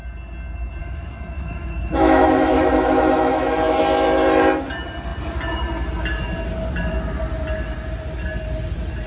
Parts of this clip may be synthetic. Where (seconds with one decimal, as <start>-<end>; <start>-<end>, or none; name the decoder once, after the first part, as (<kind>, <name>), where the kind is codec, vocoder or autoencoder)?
0.8-3.8 (autoencoder, DAC-VAE)